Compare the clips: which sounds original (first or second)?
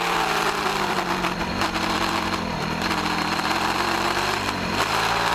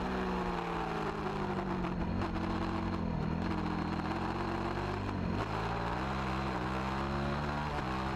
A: second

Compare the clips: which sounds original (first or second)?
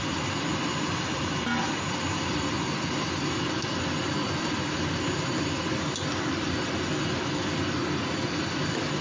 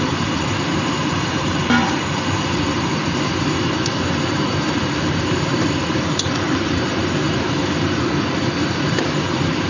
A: first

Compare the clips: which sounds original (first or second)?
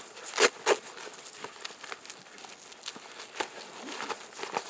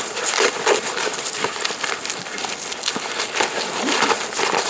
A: first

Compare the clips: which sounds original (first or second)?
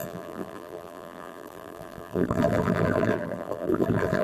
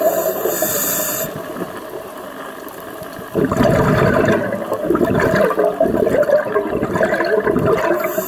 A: second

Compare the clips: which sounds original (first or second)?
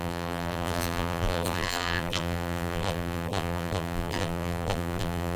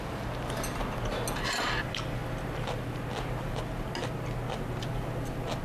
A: second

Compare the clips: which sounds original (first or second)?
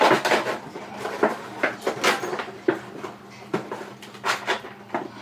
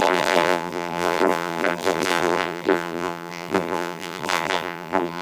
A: first